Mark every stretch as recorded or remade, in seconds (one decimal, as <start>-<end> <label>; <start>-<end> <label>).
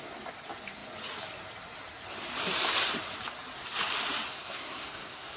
0.0-4.3 recorded; 4.3-5.4 remade